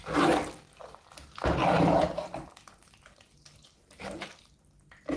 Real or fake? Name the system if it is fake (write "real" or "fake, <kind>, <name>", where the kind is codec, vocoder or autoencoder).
real